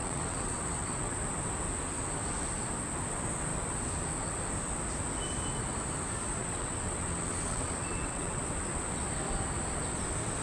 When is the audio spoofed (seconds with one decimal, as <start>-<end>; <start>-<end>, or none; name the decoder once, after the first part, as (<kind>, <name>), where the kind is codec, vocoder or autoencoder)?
0.0-1.2 (vocoder, WaveNeXt); 6.4-8.4

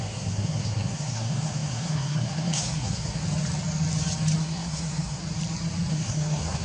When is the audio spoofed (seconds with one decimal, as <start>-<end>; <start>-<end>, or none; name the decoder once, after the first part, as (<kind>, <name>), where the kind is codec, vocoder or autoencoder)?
0.0-3.2 (codec, SNAC); 4.4-5.2; 5.9-6.6